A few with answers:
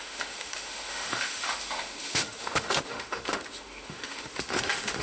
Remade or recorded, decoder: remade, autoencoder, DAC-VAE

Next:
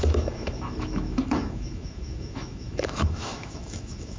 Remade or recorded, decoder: remade, autoencoder, DAC-VAE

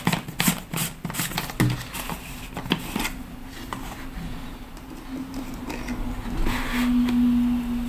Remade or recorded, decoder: recorded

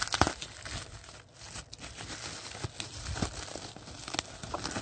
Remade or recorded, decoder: recorded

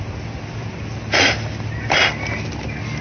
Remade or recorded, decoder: recorded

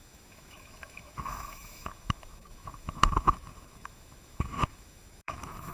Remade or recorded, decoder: remade, autoencoder, DAC-VAE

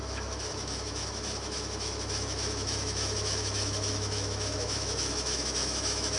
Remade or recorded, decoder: remade, autoencoder, DAC-VAE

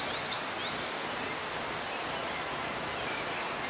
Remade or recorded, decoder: recorded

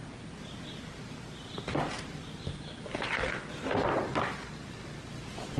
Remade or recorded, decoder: recorded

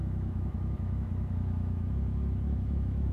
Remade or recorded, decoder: remade, autoencoder, DAC-VAE